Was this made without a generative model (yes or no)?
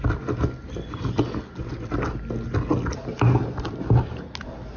yes